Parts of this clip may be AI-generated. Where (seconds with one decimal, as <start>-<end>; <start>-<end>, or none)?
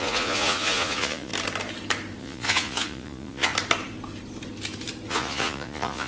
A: 0.0-1.3; 2.2-3.5; 5.1-6.1